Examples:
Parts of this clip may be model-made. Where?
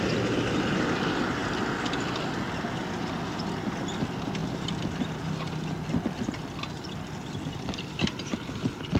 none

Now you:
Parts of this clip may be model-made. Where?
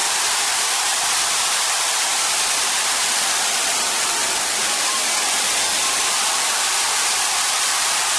0.0-3.4 (vocoder, BigVGAN v2); 4.2-4.9; 5.7-7.1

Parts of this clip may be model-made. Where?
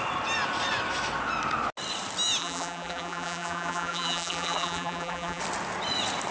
2.4-5.4 (vocoder, BigVGAN v2)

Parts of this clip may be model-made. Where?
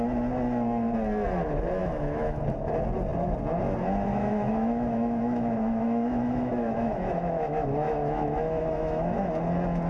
1.8-2.4 (autoencoder, DAC-VAE); 4.1-9.3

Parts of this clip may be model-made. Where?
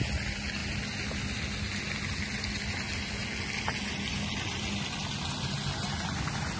none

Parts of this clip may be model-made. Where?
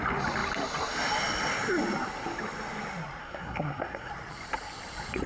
3.2-4.1 (codec, SNAC)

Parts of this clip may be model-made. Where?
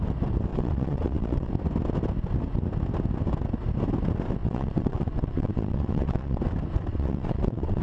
0.5-1.5 (vocoder, WaveNeXt); 4.4-6.4; 6.9-7.8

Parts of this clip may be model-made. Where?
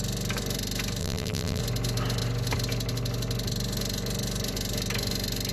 1.0-1.6 (vocoder, BigVGAN v2)